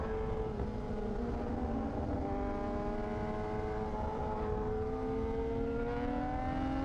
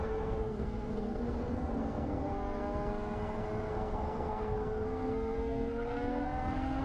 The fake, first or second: second